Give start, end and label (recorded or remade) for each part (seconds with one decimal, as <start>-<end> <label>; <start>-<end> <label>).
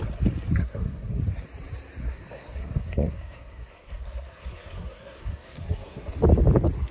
0.0-0.6 recorded; 0.6-1.2 remade; 1.2-2.0 recorded; 2.0-6.1 remade; 6.1-6.9 recorded